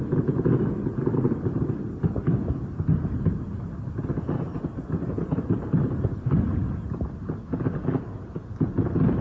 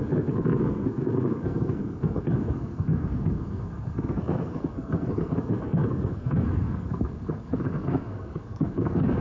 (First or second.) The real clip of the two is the first